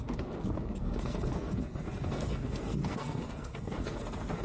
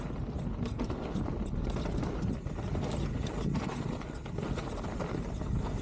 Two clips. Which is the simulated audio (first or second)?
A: first